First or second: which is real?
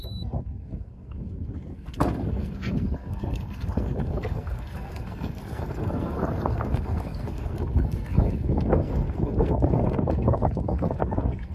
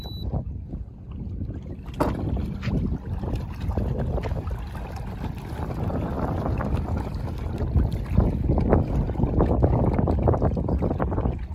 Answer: second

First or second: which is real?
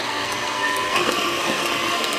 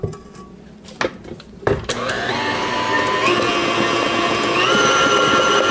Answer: second